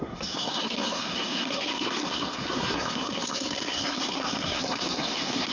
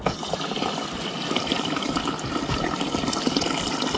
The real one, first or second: second